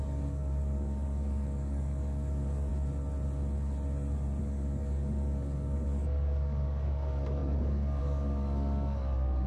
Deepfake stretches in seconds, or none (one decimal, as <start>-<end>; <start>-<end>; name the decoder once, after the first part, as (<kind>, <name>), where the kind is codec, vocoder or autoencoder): 0.0-2.7 (codec, DAC); 4.4-9.5